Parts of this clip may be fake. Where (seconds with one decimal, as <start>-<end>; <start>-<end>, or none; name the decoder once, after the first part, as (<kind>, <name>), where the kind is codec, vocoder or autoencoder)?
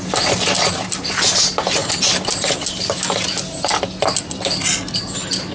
none